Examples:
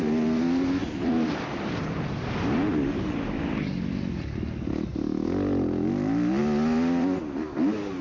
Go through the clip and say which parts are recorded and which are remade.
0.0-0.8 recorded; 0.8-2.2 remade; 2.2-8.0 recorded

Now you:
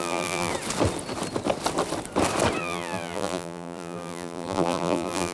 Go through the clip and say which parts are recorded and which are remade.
0.0-0.5 remade; 0.5-2.6 recorded; 2.6-5.3 remade

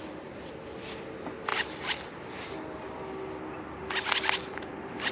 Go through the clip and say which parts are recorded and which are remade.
0.0-1.5 remade; 1.5-4.6 recorded; 4.6-5.1 remade

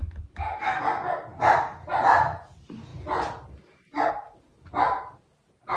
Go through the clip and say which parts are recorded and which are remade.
0.0-2.9 recorded; 2.9-4.1 remade; 4.1-5.8 recorded

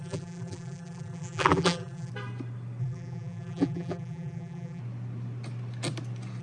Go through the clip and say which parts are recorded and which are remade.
0.0-2.1 remade; 2.1-2.8 recorded; 2.8-4.8 remade; 4.8-6.4 recorded

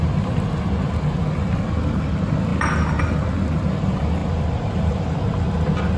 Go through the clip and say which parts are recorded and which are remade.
0.0-4.2 recorded; 4.2-5.4 remade; 5.4-6.0 recorded

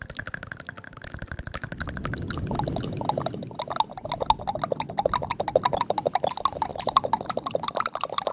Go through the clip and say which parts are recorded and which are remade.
0.0-6.7 recorded; 6.7-8.3 remade

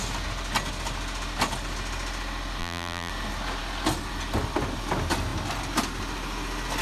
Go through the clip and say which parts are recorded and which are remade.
0.0-2.6 recorded; 2.6-3.1 remade; 3.1-6.8 recorded